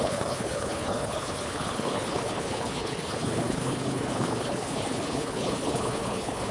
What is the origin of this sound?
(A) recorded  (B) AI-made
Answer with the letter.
B